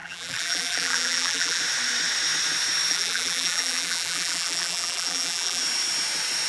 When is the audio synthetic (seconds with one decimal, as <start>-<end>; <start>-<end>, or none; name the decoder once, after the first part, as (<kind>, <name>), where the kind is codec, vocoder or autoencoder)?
0.0-1.6 (vocoder, BigVGAN v2); 2.9-5.6